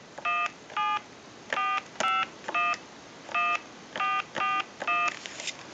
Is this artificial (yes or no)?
no